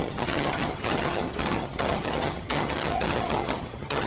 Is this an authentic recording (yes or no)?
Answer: no